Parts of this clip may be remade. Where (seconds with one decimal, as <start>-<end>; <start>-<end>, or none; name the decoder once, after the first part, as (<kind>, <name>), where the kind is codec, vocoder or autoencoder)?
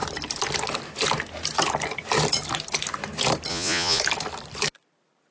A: 3.5-4.0 (vocoder, Vocos)